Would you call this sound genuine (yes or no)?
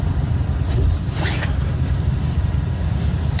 yes